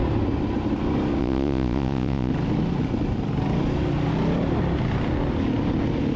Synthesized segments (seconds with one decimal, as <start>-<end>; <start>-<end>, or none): 1.2-2.3